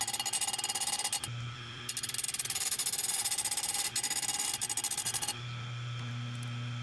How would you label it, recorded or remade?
recorded